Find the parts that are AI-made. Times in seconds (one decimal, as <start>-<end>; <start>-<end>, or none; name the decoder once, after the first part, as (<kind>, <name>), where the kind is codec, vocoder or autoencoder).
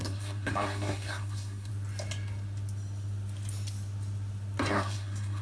0.0-1.7 (codec, SNAC); 4.7-5.4